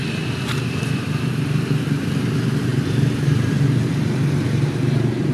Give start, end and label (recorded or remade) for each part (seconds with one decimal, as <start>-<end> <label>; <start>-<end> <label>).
0.0-1.3 remade; 1.3-2.7 recorded; 2.7-4.2 remade; 4.2-5.3 recorded